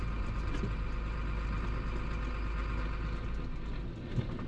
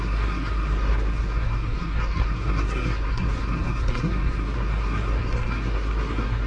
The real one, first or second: first